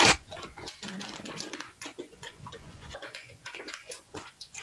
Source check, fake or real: fake